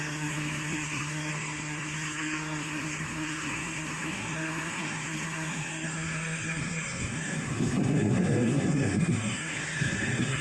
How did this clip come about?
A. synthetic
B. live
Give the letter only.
A